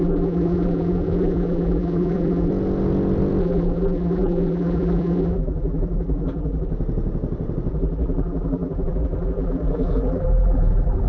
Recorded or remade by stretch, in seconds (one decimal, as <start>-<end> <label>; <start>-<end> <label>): 0.0-2.5 remade; 2.5-3.4 recorded; 3.4-6.7 remade; 6.7-7.7 recorded; 7.7-11.1 remade